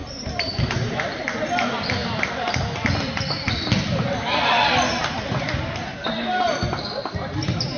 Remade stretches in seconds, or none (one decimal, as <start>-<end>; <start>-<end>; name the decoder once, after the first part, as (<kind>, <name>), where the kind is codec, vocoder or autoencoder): 0.0-1.0 (vocoder, BigVGAN v2)